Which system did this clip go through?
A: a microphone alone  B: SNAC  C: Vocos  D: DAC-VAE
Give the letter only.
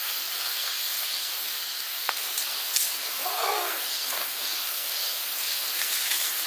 B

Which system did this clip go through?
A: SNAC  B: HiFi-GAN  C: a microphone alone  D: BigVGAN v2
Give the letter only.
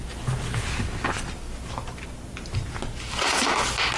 C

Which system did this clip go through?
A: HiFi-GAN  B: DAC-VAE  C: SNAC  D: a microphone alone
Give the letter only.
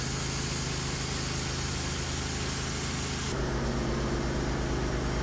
D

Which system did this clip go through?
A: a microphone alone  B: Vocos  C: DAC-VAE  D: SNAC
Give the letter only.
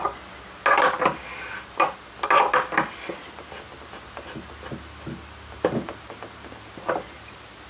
A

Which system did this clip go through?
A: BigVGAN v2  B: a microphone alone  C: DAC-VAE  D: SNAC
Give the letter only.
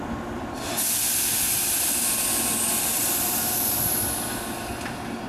B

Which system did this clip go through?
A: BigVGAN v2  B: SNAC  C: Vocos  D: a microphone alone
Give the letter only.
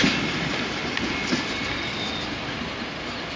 D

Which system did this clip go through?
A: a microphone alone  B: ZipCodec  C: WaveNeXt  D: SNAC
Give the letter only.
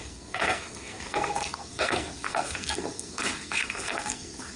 D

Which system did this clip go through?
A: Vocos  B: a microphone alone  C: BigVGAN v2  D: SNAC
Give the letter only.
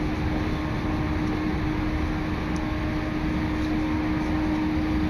B